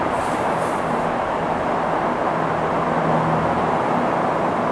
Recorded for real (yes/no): yes